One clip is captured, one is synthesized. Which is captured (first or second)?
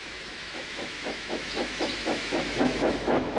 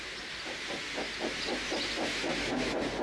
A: second